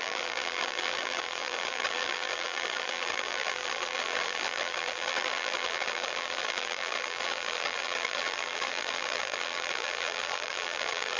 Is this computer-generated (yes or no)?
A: yes